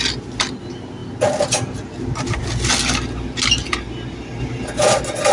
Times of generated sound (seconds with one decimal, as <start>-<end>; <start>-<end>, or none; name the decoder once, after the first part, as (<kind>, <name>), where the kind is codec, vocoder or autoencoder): none